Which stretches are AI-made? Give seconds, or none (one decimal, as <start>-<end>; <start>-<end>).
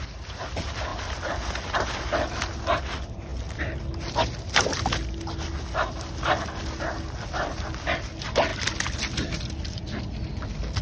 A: 8.5-10.0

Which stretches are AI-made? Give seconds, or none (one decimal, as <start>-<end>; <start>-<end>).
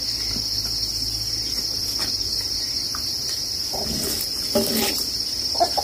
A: none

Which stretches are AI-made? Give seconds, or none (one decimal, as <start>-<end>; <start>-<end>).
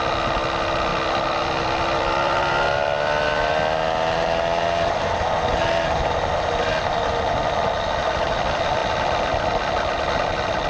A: 0.9-3.5; 8.8-9.5